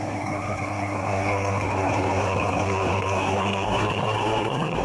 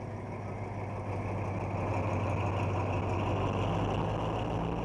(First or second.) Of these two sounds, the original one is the second